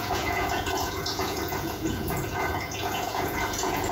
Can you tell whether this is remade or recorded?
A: remade